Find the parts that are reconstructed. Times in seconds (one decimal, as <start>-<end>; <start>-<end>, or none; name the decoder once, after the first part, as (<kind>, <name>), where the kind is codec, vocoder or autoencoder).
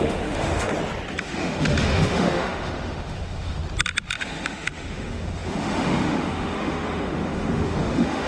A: 0.0-0.7 (autoencoder, DAC-VAE); 1.2-3.6; 4.2-8.3